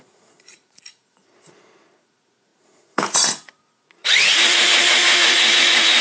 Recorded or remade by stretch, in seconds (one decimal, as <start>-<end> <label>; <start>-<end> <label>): 0.0-6.0 remade